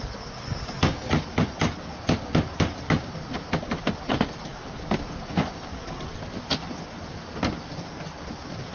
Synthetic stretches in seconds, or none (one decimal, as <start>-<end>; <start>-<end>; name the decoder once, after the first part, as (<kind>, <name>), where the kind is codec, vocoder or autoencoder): none